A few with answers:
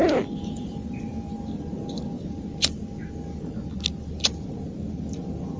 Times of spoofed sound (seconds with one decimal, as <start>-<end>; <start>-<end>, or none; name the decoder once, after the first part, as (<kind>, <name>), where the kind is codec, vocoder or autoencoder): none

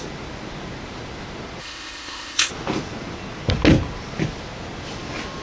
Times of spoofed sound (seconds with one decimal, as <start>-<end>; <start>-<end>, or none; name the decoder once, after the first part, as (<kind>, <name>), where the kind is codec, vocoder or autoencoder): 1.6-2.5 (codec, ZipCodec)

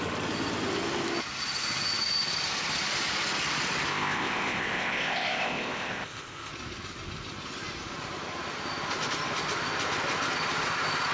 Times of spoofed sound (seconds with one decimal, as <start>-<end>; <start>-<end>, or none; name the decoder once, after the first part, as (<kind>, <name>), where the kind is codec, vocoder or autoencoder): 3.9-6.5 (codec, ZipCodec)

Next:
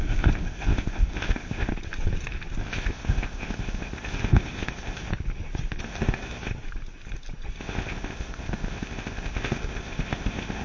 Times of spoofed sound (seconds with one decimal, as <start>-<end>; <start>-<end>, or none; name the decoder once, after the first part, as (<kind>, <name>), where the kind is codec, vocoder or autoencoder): 0.0-1.7 (codec, ZipCodec); 2.6-5.1; 5.8-6.5; 7.6-10.6

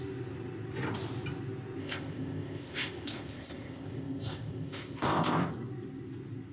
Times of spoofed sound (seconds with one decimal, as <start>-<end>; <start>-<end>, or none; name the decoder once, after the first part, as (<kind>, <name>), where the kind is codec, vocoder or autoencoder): 1.8-5.5 (codec, ZipCodec)